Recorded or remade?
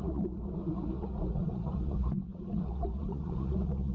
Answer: remade